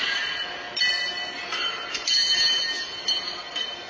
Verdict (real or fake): real